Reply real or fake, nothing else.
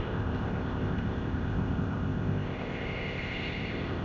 fake